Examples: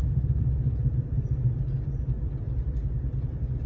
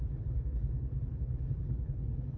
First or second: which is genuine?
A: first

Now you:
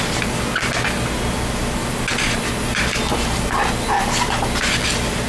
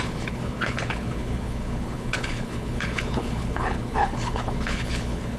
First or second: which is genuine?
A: first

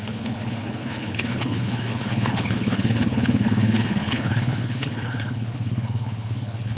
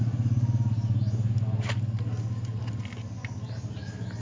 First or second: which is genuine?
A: second